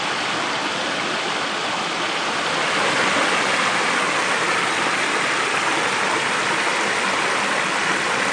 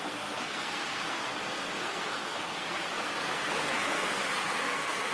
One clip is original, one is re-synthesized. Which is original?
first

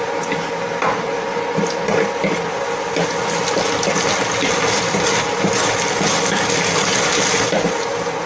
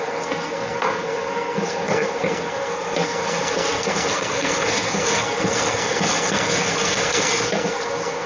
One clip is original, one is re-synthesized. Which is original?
first